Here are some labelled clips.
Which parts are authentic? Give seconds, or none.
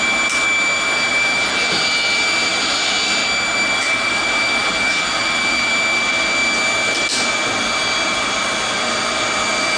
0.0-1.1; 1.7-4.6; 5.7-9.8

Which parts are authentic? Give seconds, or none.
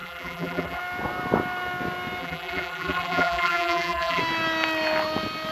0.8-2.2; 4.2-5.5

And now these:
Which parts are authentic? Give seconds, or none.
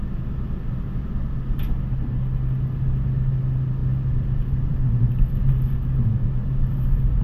0.0-6.4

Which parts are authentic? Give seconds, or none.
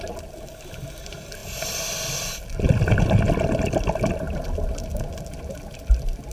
0.0-6.3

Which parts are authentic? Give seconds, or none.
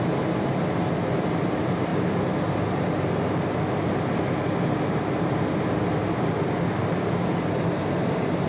0.0-8.5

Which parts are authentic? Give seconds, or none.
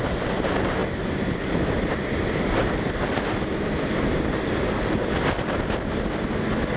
0.0-6.8